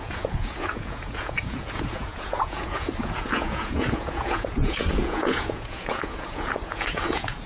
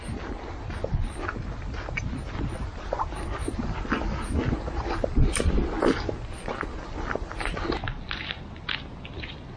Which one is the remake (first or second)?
first